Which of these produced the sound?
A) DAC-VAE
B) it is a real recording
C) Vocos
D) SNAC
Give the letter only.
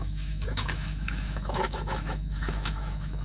A